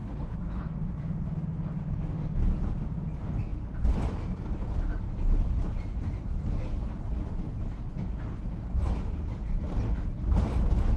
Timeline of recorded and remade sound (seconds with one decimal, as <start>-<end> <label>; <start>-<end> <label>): 0.0-0.6 remade; 0.6-11.0 recorded